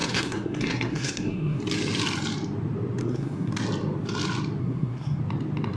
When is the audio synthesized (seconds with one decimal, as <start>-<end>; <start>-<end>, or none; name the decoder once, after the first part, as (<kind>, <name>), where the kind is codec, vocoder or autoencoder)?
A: 0.0-1.6 (codec, SNAC); 3.0-3.5; 4.6-5.2